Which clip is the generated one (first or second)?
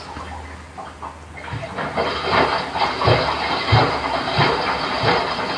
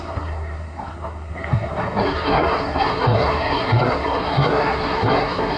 second